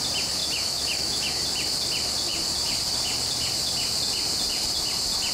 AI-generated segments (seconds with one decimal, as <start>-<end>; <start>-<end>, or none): 0.4-1.4